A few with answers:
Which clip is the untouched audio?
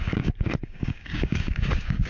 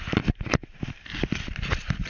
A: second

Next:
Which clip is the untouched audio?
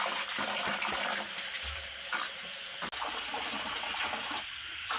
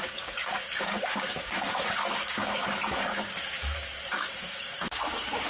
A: first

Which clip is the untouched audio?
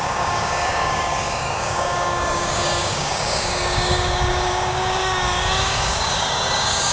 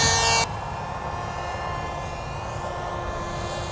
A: second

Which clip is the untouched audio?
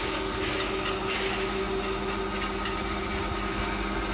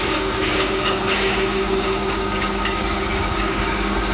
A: first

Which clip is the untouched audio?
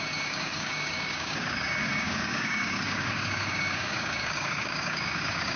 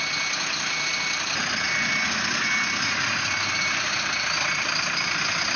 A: second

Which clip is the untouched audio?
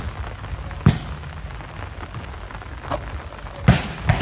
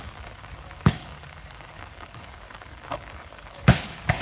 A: first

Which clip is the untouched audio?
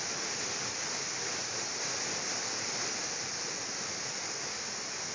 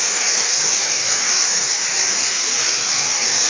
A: first